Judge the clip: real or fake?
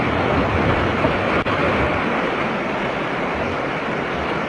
real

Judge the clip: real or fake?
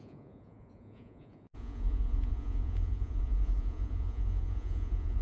fake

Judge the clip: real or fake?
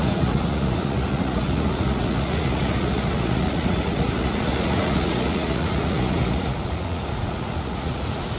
fake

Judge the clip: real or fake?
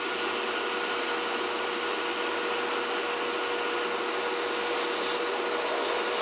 real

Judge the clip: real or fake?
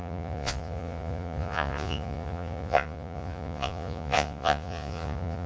fake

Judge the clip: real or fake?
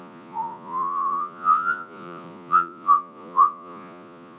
fake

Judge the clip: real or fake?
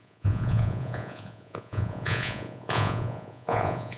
fake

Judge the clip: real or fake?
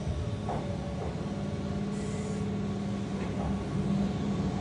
real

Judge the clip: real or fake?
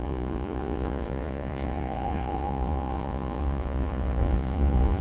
fake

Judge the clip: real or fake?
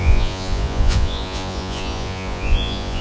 fake